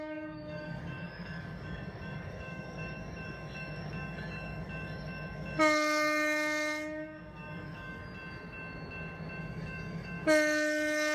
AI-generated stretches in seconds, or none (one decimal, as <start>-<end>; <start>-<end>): 0.0-8.0; 9.4-11.1